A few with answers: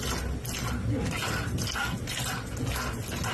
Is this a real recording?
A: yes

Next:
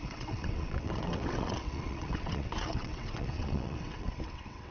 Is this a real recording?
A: no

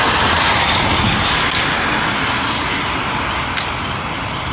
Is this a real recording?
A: yes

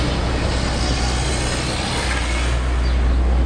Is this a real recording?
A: yes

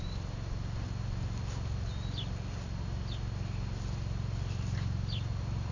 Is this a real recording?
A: yes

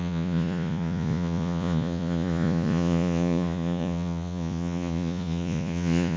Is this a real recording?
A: no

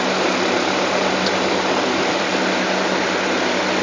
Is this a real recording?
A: yes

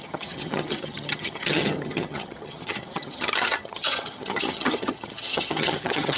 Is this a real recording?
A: no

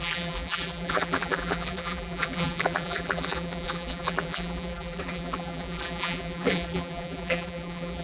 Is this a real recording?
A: no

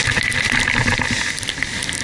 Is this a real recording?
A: yes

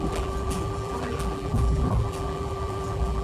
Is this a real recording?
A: no